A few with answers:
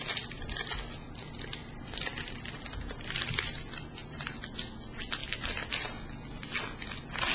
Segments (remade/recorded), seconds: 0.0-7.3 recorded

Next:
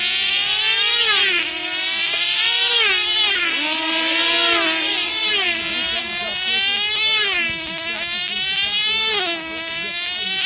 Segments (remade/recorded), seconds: 0.0-10.5 recorded

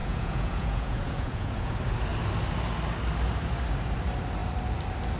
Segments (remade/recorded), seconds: 0.0-1.7 remade; 1.7-5.2 recorded

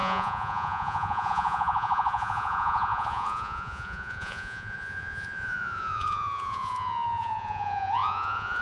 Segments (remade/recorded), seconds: 0.0-8.6 remade